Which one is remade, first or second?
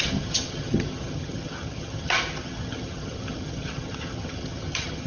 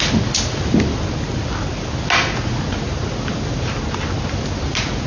first